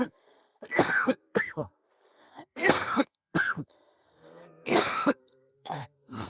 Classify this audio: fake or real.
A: fake